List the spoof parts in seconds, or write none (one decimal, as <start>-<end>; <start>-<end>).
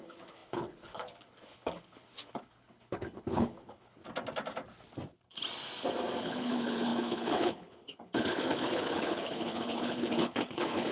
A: 0.0-4.0; 6.2-10.9